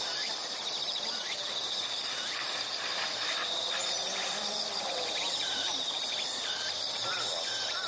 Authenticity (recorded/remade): remade